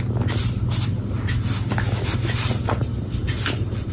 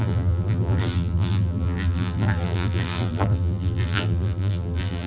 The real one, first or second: first